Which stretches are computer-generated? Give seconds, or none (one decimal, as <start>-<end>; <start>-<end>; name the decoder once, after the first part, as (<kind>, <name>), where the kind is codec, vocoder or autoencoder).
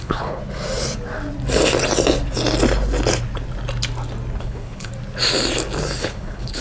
0.0-0.4 (codec, HILCodec); 4.4-4.9; 6.0-6.6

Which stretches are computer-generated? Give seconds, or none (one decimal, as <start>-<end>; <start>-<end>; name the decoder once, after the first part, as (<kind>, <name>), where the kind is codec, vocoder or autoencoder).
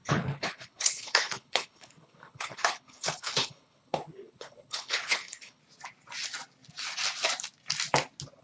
0.0-5.6 (codec, HILCodec)